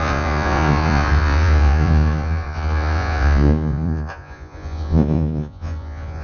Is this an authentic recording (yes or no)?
no